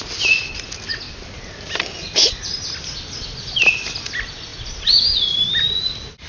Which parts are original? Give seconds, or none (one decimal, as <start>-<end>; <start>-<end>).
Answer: 0.0-4.5; 5.8-6.3